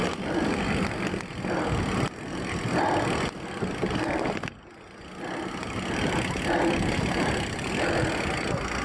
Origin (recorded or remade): recorded